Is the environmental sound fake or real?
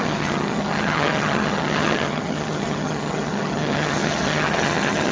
fake